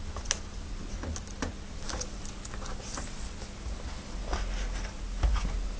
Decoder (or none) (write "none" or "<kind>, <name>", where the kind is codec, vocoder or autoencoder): none